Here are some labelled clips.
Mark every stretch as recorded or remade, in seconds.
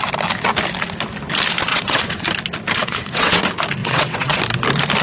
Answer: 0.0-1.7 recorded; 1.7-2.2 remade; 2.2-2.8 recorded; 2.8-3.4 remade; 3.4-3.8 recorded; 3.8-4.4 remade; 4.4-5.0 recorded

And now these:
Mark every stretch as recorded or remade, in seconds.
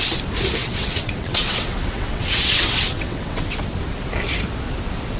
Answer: 0.0-0.6 recorded; 0.6-3.6 remade; 3.6-5.2 recorded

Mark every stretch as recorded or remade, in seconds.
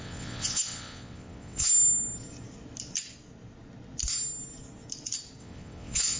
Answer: 0.0-1.7 remade; 1.7-5.4 recorded; 5.4-6.2 remade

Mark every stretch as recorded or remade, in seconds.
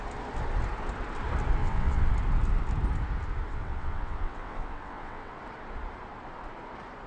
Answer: 0.0-1.6 recorded; 1.6-2.1 remade; 2.1-3.5 recorded; 3.5-5.4 remade; 5.4-7.1 recorded